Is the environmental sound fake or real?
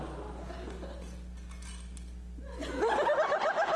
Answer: real